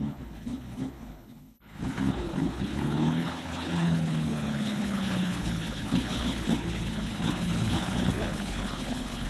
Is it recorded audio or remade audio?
remade